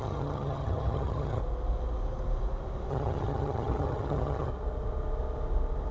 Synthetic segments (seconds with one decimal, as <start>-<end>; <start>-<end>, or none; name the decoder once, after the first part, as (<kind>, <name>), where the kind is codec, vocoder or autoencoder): 0.0-1.4 (vocoder, HiFi-GAN); 2.9-4.5